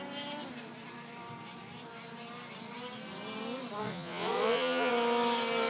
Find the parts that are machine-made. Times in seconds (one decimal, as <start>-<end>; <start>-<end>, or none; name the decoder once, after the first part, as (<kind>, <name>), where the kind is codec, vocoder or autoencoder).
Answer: 3.8-4.9 (vocoder, Vocos)